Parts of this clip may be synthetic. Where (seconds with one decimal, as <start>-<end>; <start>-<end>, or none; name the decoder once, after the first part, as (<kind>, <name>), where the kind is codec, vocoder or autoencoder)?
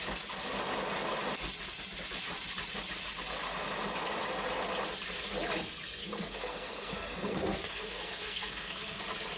6.0-9.0 (codec, SNAC)